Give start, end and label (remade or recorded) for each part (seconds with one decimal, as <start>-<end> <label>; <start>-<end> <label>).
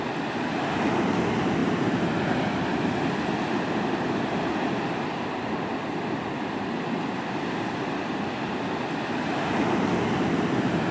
0.0-1.6 recorded; 1.6-2.4 remade; 2.4-10.9 recorded